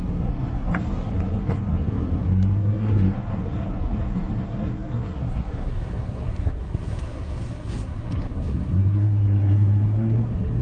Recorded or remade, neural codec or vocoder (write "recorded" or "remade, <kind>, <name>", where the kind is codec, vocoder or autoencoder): remade, codec, SNAC